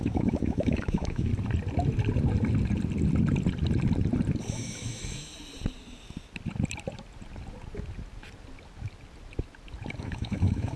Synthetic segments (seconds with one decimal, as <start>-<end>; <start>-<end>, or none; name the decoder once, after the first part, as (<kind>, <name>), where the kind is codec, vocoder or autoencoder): 0.0-1.3 (autoencoder, DAC-VAE); 4.5-5.3; 10.0-10.8